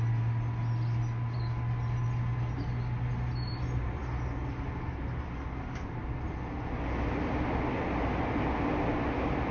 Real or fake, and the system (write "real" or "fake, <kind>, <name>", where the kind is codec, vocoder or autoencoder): real